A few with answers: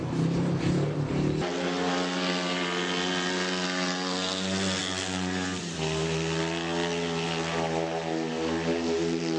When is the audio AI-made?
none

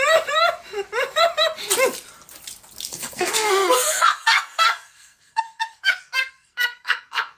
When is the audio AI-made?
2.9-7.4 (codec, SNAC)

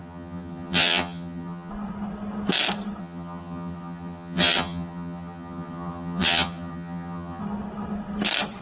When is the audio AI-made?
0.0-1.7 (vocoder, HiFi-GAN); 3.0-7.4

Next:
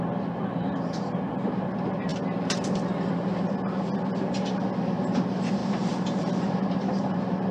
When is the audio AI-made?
5.6-7.5 (vocoder, BigVGAN v2)